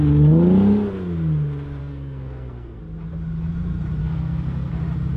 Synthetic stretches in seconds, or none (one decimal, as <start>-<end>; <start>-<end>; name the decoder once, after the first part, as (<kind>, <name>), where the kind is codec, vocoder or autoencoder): 1.8-2.8 (codec, SNAC); 4.0-4.7